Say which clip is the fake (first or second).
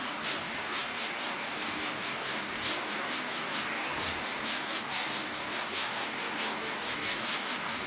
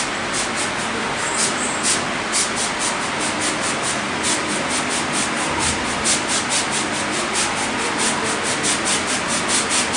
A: first